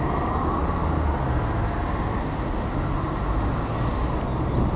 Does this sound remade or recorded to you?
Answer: recorded